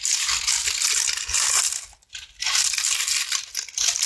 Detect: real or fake real